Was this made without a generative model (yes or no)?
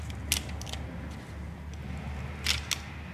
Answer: yes